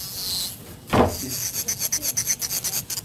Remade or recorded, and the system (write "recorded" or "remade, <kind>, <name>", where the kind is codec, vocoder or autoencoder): recorded